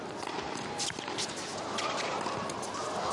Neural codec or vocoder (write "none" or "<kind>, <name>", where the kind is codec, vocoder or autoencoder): none